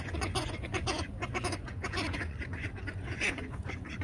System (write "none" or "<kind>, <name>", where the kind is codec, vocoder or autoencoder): vocoder, Vocos